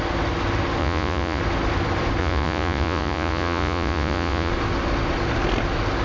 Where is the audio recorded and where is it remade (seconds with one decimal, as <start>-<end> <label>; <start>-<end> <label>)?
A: 0.0-0.8 recorded; 0.8-1.4 remade; 1.4-2.2 recorded; 2.2-4.5 remade; 4.5-6.0 recorded